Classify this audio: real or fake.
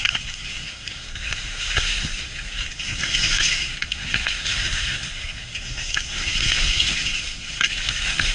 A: fake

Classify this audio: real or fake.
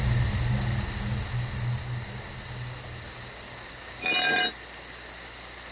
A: real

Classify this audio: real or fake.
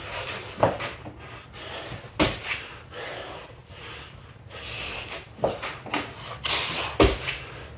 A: real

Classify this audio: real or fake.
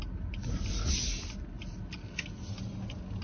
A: real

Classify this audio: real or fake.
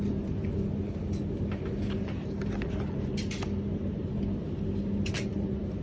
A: real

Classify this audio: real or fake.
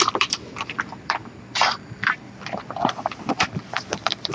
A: fake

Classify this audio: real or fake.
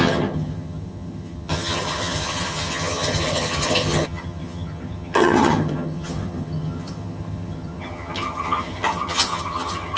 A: fake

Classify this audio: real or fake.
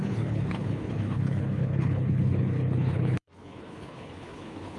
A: fake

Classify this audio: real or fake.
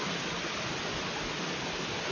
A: real